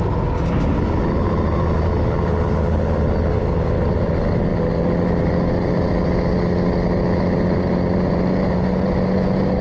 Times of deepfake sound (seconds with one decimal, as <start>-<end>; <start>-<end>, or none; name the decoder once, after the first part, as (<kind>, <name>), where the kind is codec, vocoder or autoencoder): none